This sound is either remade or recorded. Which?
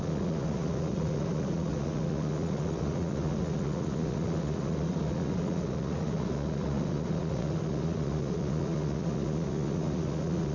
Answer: remade